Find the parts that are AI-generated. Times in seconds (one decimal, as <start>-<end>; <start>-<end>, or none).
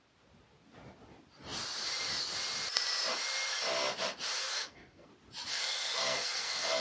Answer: 4.4-5.1; 5.5-6.8